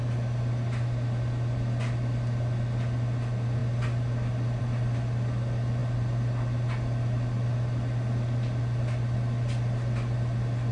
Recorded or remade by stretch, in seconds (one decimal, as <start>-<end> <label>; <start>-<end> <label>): 0.0-10.7 recorded